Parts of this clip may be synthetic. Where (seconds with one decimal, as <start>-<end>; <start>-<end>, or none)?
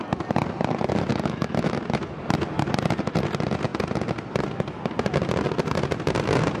1.1-1.7